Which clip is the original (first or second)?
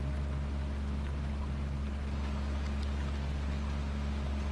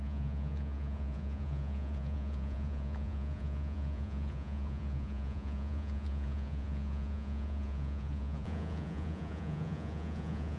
first